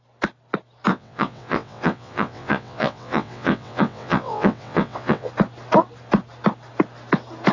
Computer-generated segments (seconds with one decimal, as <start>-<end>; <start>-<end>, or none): 0.9-5.3